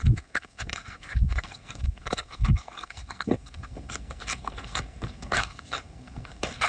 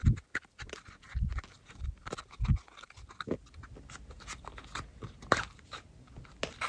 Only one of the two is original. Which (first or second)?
second